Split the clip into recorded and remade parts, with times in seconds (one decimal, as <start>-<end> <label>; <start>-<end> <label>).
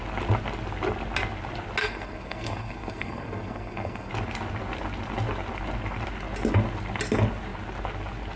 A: 0.0-1.8 recorded; 1.8-4.1 remade; 4.1-8.4 recorded